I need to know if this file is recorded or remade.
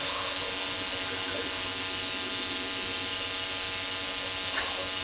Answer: recorded